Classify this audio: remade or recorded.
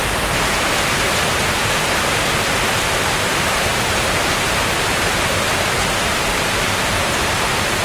remade